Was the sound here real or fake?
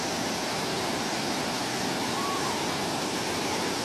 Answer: fake